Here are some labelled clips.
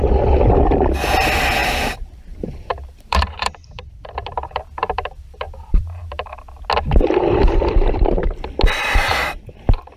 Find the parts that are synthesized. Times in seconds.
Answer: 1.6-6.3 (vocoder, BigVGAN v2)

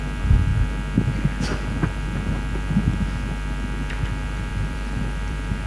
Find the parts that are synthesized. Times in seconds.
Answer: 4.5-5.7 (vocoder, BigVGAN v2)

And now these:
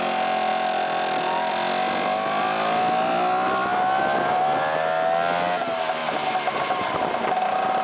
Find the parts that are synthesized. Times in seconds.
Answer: none